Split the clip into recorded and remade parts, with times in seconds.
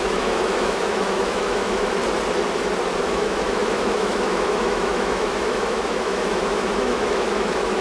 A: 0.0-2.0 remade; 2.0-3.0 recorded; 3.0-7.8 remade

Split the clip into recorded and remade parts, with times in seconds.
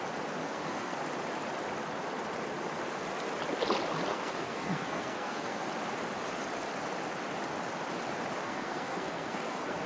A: 0.0-0.4 recorded; 0.4-1.0 remade; 1.0-4.1 recorded; 4.1-5.7 remade; 5.7-8.4 recorded; 8.4-9.9 remade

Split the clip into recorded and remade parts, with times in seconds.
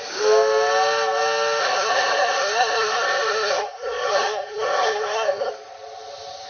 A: 0.0-1.6 recorded; 1.6-5.5 remade; 5.5-6.5 recorded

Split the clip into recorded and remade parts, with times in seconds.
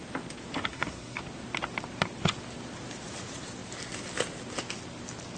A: 0.0-0.7 recorded; 0.7-1.2 remade; 1.2-5.4 recorded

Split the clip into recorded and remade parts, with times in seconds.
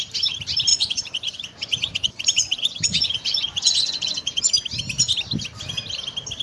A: 0.0-0.7 recorded; 0.7-4.5 remade; 4.5-6.4 recorded